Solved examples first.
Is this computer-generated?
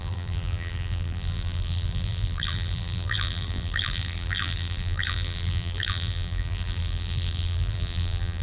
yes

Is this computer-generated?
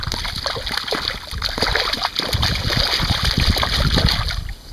no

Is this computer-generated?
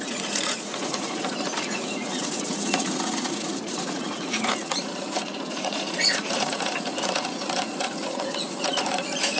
yes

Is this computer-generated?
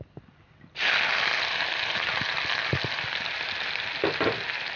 no